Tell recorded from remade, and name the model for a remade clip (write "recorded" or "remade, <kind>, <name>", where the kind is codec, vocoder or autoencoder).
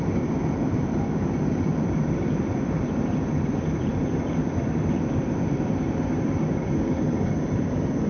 remade, vocoder, BigVGAN v2